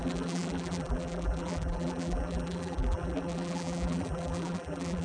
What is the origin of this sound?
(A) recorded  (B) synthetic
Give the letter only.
B